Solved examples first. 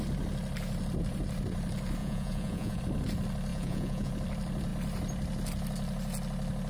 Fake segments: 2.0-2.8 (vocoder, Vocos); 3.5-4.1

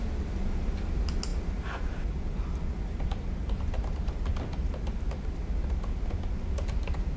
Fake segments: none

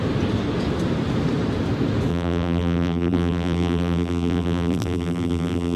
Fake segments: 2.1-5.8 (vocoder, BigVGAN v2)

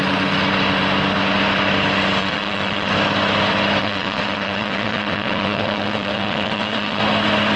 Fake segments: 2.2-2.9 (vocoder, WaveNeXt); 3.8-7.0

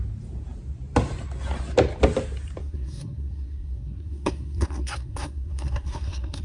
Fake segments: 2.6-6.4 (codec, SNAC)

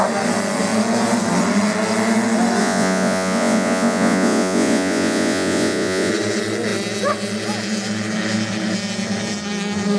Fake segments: 2.6-6.1 (vocoder, Vocos)